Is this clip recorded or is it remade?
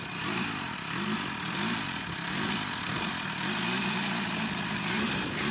recorded